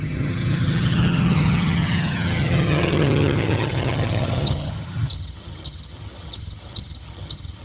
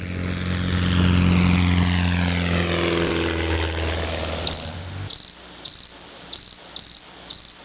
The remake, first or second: first